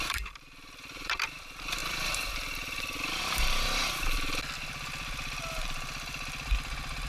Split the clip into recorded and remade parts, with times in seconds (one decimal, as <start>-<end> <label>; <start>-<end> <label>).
0.0-7.1 remade